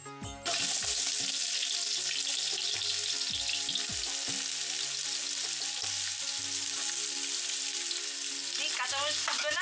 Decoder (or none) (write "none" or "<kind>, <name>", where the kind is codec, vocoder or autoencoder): none